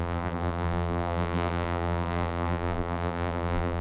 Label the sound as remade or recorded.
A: remade